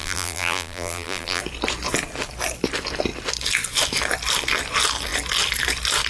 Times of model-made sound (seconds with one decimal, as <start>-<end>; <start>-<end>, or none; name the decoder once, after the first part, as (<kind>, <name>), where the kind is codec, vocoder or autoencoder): 0.0-1.4 (vocoder, BigVGAN v2)